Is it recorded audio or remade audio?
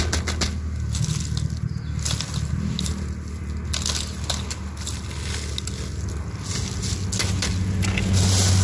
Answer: recorded